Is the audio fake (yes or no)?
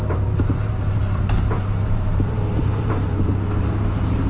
yes